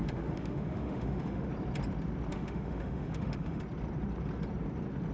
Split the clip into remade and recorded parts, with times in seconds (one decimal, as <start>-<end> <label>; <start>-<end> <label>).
0.0-1.5 remade; 1.5-2.3 recorded; 2.3-3.6 remade; 3.6-5.1 recorded